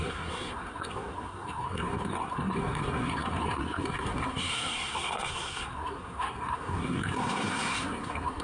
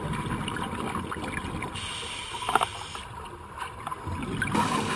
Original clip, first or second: second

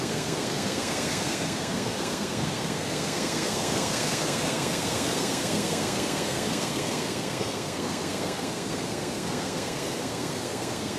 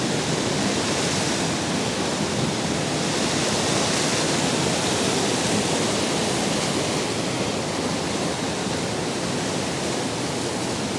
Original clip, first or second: second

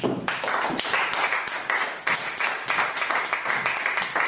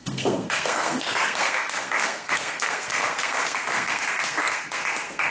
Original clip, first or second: first